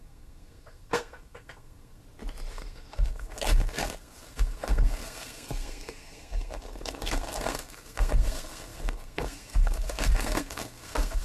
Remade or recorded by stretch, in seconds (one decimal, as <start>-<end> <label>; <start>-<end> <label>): 0.0-2.0 remade; 2.0-2.5 recorded; 2.5-11.2 remade